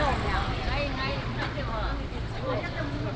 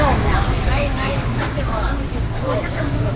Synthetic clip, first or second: second